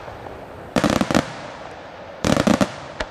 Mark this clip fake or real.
fake